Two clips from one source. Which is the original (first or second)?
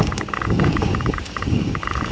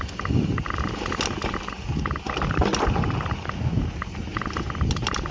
second